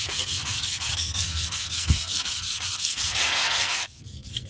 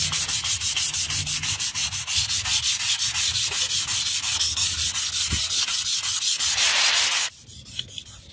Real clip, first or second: second